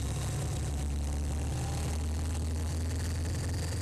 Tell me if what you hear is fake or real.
real